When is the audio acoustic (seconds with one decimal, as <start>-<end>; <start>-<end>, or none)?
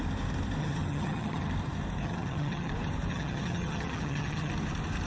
0.0-0.6; 1.5-2.0; 2.7-3.1; 4.5-5.1